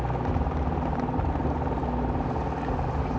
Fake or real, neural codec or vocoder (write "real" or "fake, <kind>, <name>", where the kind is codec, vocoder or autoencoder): real